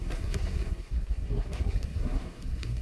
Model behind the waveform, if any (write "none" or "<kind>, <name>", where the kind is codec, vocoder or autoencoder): codec, SNAC